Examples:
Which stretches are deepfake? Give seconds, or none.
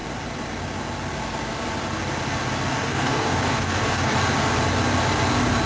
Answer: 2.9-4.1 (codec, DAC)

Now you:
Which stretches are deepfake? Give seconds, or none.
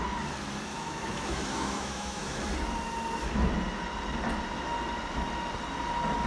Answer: 0.7-2.4 (autoencoder, DAC-VAE)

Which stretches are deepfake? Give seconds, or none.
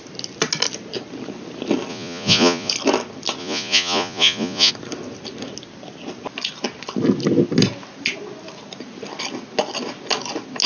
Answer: 1.9-2.7 (vocoder, Vocos); 3.4-4.7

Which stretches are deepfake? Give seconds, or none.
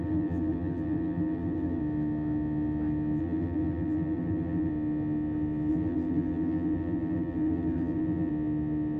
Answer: 0.0-1.8 (vocoder, BigVGAN v2); 3.2-4.7; 5.7-8.3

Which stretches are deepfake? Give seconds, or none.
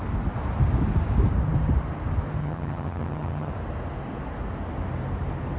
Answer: 2.4-3.5 (vocoder, HiFi-GAN)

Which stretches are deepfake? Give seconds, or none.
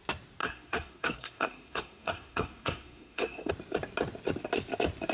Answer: 0.4-3.5 (codec, SNAC)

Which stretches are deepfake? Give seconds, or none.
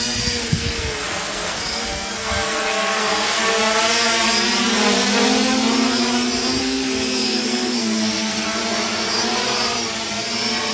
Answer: 0.0-3.4 (codec, SNAC); 6.6-8.6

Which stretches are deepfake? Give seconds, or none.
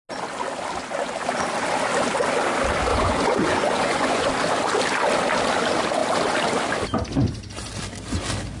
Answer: 2.9-4.3 (vocoder, Vocos)